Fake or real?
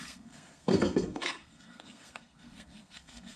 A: fake